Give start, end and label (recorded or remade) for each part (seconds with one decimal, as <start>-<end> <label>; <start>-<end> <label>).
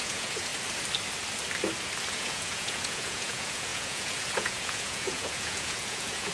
0.0-0.5 remade; 0.5-2.1 recorded; 2.1-6.3 remade